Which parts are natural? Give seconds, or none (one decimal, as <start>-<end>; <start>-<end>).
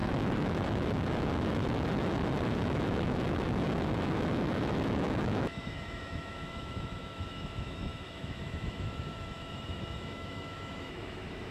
none